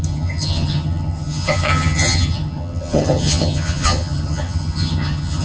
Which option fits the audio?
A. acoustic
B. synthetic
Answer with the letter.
B